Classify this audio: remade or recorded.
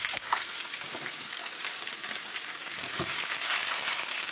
remade